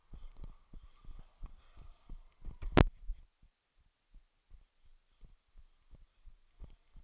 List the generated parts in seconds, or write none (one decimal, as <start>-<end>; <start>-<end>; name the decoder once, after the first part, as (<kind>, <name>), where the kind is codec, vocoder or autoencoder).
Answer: none